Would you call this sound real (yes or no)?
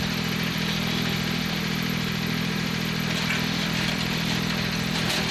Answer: no